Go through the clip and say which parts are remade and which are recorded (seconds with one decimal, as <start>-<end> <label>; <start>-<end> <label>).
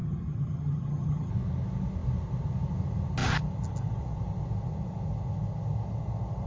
0.0-1.3 remade; 1.3-6.5 recorded